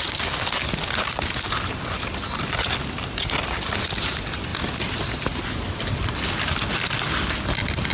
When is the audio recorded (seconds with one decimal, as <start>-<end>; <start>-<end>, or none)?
0.0-7.9